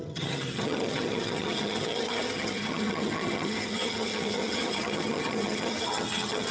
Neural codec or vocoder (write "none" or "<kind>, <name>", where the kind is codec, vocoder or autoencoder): vocoder, HiFi-GAN